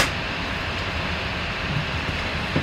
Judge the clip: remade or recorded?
recorded